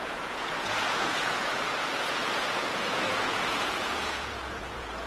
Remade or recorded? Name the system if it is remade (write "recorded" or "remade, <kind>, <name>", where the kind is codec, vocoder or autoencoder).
remade, vocoder, Vocos